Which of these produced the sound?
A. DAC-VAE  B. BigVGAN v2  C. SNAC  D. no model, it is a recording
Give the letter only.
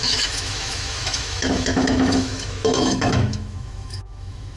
A